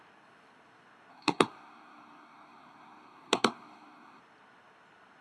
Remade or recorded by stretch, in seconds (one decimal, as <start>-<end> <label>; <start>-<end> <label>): 0.0-1.1 recorded; 1.1-4.2 remade; 4.2-5.2 recorded